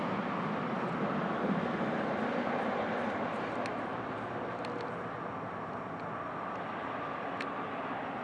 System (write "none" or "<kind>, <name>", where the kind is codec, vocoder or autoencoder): none